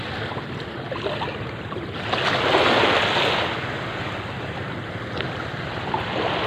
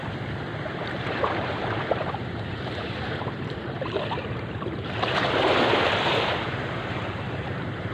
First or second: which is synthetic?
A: second